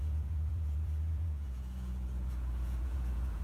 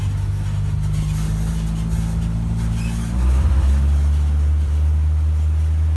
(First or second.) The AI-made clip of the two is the first